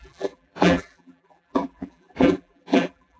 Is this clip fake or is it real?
fake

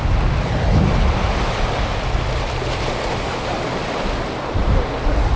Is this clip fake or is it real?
real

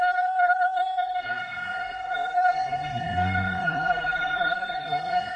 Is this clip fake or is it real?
fake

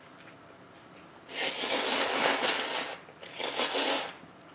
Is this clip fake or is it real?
real